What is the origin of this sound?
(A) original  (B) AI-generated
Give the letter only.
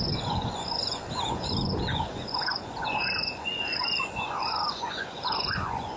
B